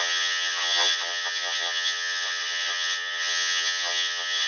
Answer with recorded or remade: remade